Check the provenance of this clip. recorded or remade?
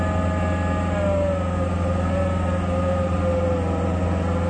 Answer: recorded